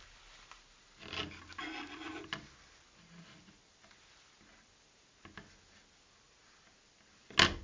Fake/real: real